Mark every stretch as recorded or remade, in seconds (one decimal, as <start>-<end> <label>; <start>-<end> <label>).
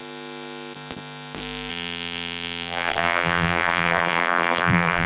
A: 0.0-1.7 recorded; 1.7-5.1 remade